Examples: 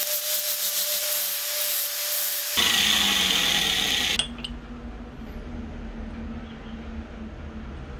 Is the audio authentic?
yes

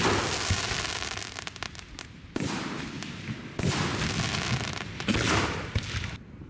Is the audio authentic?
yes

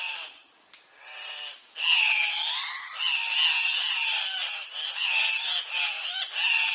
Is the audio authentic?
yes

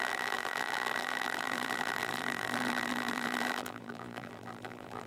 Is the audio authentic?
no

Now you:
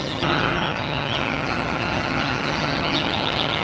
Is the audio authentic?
no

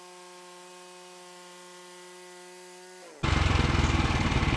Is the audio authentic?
yes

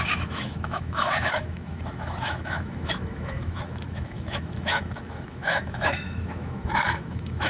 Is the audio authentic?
no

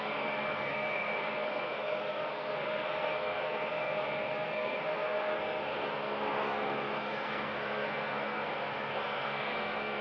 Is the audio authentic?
no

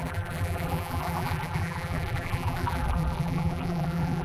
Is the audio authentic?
no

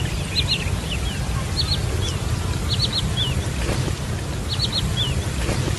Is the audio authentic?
yes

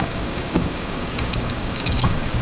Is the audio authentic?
no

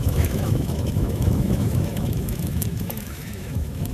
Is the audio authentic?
no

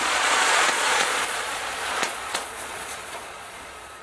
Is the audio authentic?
no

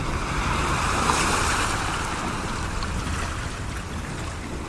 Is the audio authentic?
yes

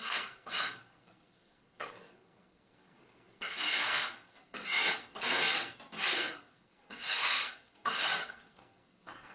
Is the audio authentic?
no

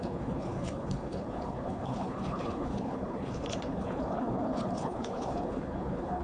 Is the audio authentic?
no